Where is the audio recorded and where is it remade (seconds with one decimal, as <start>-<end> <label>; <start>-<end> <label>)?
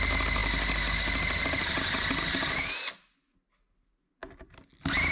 0.0-5.1 recorded